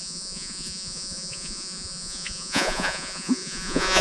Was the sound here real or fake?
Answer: fake